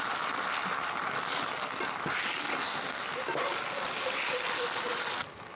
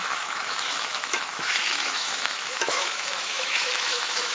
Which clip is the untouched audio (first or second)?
first